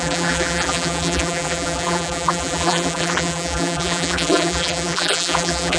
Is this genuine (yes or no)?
no